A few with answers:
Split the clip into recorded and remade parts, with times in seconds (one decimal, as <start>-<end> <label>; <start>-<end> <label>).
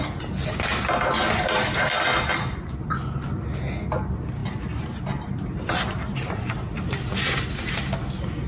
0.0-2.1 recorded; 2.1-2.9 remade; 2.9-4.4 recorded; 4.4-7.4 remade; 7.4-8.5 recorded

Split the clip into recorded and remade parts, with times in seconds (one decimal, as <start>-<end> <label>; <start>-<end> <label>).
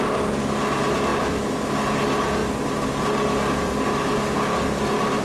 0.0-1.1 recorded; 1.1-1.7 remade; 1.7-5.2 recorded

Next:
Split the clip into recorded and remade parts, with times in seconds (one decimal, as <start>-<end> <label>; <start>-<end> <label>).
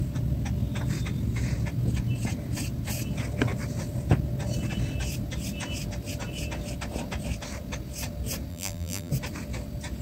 0.0-8.5 recorded; 8.5-9.1 remade; 9.1-10.0 recorded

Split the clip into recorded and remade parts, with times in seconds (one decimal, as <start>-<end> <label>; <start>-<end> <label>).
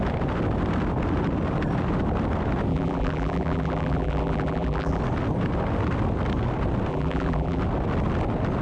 0.0-2.7 recorded; 2.7-5.0 remade; 5.0-6.9 recorded; 6.9-7.6 remade; 7.6-8.6 recorded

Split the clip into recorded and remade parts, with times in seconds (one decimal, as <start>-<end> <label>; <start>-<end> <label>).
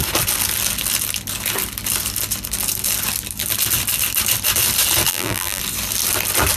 0.0-5.1 recorded; 5.1-5.6 remade; 5.6-6.6 recorded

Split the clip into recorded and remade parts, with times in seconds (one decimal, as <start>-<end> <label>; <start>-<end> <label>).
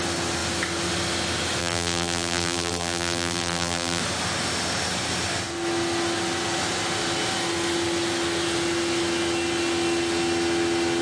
0.0-1.6 recorded; 1.6-4.0 remade; 4.0-11.0 recorded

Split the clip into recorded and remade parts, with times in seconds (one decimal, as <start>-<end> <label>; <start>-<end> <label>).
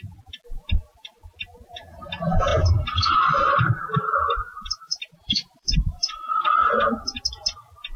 0.0-2.5 recorded; 2.5-7.2 remade; 7.2-8.0 recorded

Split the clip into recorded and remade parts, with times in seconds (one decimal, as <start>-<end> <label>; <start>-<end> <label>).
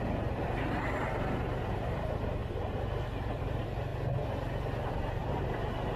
0.0-2.4 remade; 2.4-3.4 recorded; 3.4-3.9 remade; 3.9-4.9 recorded; 4.9-6.0 remade